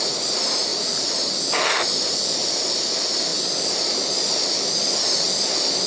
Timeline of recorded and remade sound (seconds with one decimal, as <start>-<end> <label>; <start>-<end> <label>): 0.0-5.9 recorded